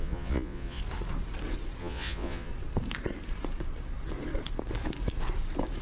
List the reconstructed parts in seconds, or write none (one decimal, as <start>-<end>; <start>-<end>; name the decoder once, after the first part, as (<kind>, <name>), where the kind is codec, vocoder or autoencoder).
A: 0.0-0.8 (vocoder, Vocos); 1.8-2.5